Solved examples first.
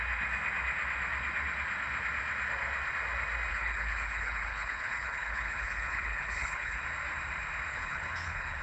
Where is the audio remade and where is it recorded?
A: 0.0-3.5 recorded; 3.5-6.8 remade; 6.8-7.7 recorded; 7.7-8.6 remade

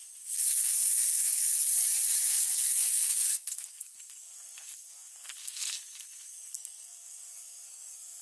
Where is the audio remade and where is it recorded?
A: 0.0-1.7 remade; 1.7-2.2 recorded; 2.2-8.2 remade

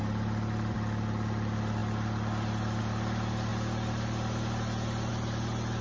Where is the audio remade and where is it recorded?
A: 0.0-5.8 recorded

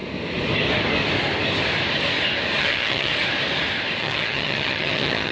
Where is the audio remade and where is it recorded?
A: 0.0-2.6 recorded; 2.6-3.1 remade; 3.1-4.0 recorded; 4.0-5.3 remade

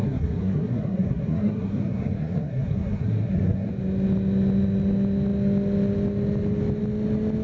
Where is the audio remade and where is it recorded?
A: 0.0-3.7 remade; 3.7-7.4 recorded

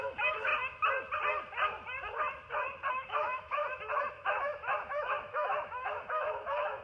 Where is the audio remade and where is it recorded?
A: 0.0-0.5 remade; 0.5-2.9 recorded; 2.9-3.6 remade; 3.6-4.1 recorded; 4.1-6.8 remade

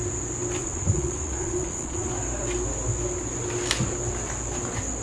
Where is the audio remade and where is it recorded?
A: 0.0-0.6 recorded; 0.6-2.1 remade; 2.1-5.0 recorded

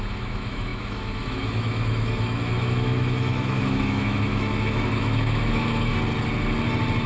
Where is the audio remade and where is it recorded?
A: 0.0-5.9 remade; 5.9-7.1 recorded